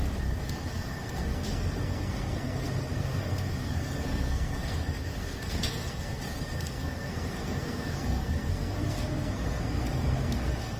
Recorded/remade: remade